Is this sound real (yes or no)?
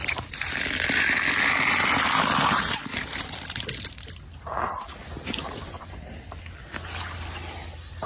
yes